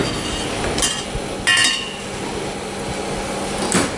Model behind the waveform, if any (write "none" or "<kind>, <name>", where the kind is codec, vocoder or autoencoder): none